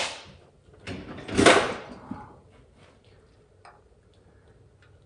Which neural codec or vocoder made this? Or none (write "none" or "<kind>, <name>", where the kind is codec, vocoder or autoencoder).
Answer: none